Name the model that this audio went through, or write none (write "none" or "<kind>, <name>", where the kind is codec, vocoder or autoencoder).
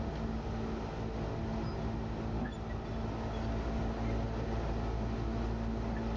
none